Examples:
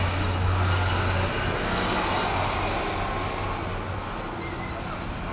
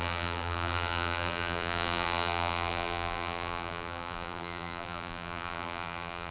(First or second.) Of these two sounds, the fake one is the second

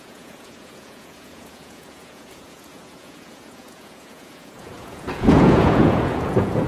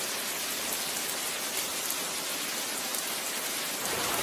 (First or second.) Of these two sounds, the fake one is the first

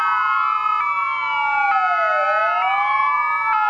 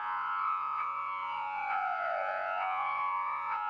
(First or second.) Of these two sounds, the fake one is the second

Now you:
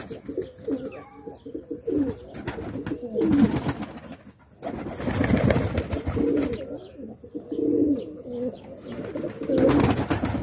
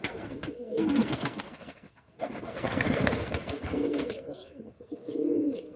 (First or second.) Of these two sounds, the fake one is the second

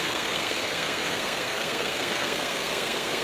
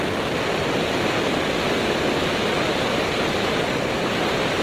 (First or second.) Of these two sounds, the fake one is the first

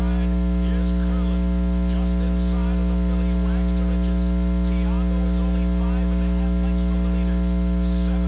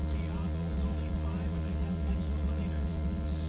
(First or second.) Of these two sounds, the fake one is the second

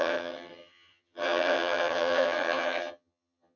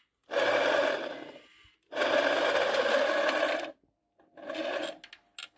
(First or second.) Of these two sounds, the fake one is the first